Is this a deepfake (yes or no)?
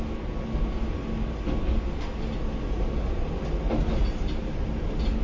no